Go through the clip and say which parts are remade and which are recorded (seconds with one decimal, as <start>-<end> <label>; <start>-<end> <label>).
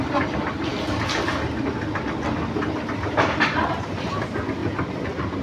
0.0-5.4 recorded